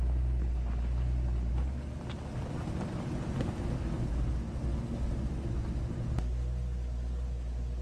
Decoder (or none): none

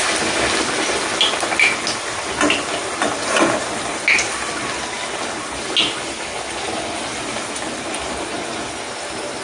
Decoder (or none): none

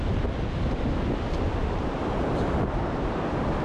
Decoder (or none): none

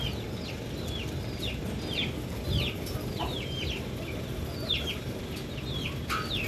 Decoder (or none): vocoder, BigVGAN v2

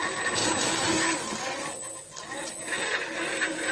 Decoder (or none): none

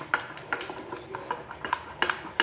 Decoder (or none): none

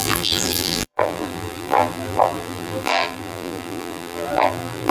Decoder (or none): vocoder, BigVGAN v2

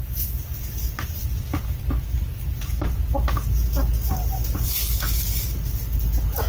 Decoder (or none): none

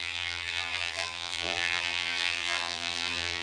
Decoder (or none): vocoder, BigVGAN v2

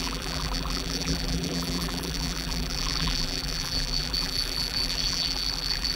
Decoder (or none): vocoder, BigVGAN v2